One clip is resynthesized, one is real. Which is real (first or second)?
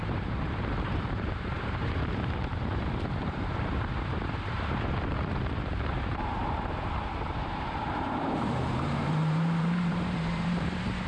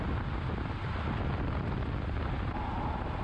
second